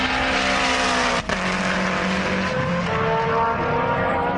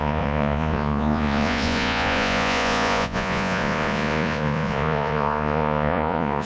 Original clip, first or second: first